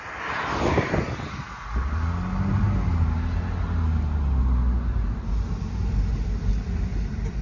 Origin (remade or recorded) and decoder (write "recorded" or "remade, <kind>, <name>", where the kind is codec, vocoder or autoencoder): recorded